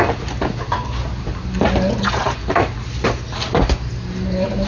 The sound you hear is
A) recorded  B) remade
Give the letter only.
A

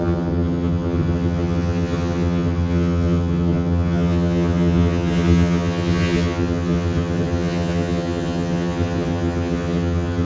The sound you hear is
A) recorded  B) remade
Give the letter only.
B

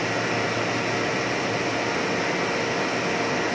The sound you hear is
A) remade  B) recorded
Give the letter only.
B